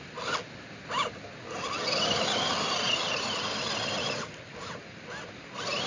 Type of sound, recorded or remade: recorded